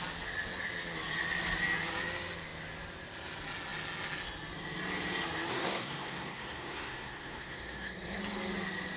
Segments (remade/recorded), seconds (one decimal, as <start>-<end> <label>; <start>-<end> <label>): 0.0-5.5 recorded; 5.5-8.2 remade; 8.2-9.0 recorded